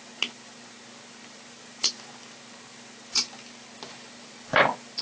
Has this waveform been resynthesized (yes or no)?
no